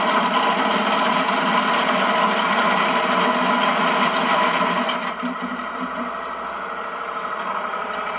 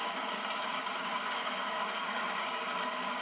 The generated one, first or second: second